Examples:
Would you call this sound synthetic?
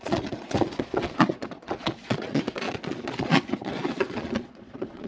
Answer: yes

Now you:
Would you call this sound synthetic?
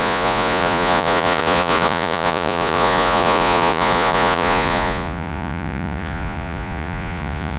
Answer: yes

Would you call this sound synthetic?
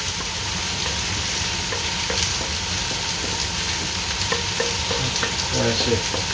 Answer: no